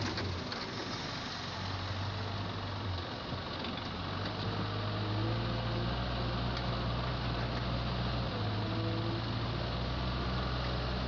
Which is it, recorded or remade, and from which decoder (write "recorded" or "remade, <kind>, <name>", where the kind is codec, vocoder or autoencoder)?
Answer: recorded